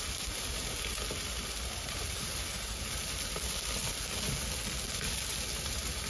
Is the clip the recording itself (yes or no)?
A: yes